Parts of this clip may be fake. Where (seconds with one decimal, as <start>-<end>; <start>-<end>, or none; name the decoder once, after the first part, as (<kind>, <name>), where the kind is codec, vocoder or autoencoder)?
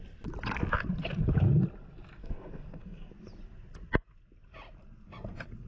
2.2-3.1 (codec, SNAC)